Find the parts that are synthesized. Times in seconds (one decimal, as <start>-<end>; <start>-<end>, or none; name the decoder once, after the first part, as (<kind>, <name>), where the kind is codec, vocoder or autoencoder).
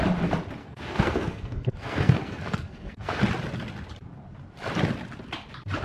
0.6-3.2 (codec, SNAC)